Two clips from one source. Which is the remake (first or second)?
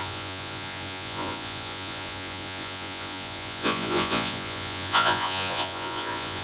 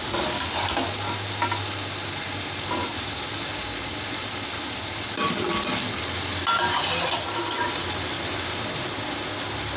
first